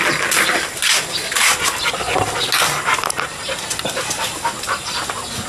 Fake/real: real